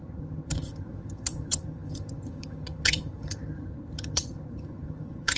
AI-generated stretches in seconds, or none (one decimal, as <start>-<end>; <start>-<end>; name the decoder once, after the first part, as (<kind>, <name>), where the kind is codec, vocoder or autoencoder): 0.0-5.4 (vocoder, HiFi-GAN)